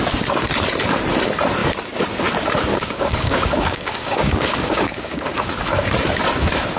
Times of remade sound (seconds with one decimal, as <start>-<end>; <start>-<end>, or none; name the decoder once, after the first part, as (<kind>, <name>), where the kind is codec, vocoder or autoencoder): 2.7-5.5 (codec, DAC)